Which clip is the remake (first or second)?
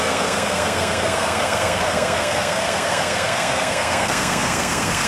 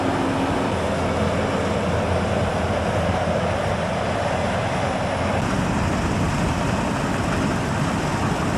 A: first